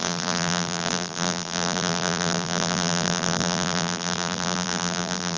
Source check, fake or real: fake